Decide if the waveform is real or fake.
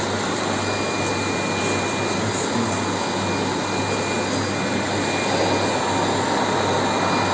real